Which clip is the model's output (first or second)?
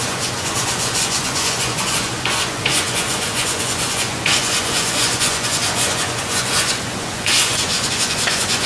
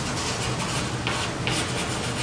first